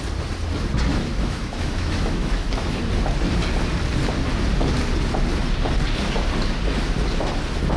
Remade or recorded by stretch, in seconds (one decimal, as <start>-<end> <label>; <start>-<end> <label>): 0.0-0.9 recorded; 0.9-2.8 remade; 2.8-7.8 recorded